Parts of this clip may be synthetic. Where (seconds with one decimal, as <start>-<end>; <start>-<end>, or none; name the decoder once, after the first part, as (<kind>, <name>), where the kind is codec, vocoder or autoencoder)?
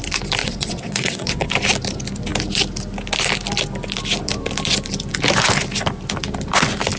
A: 0.4-1.5 (vocoder, WaveNeXt)